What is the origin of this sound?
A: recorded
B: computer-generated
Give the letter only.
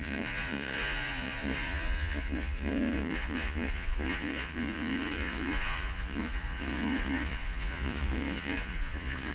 B